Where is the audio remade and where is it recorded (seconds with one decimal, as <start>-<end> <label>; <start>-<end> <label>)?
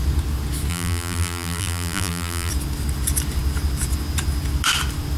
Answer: 0.0-0.7 recorded; 0.7-2.5 remade; 2.5-5.2 recorded